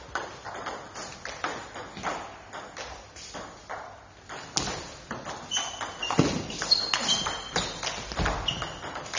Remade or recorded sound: recorded